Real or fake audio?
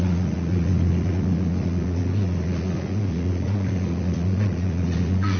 fake